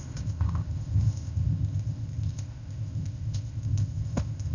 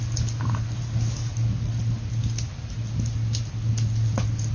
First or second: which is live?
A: second